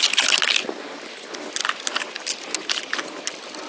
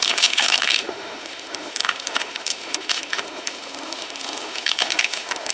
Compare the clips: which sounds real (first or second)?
first